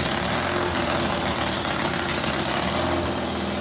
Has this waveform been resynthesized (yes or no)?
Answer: no